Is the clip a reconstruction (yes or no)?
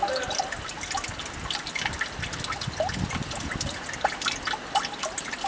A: no